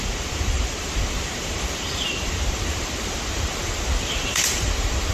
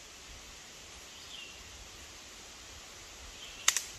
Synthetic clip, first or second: first